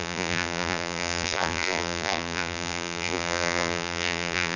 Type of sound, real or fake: fake